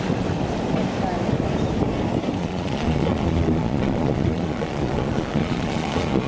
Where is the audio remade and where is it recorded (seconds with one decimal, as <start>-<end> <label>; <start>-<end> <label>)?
0.0-2.4 recorded; 2.4-6.3 remade